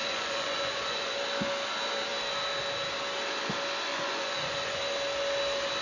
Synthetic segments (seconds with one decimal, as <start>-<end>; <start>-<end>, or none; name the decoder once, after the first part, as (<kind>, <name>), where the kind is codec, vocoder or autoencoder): 0.0-1.1 (vocoder, Vocos); 3.9-4.8